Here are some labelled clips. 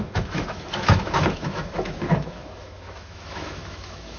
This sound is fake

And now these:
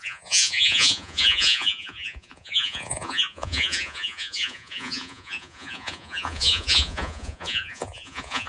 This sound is fake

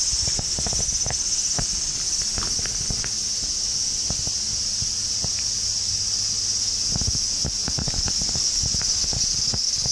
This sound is real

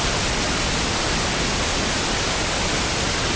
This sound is real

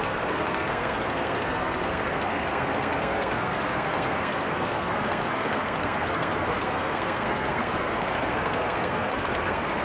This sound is fake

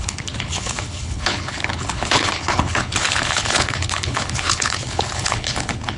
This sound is fake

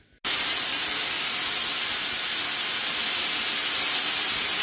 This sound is real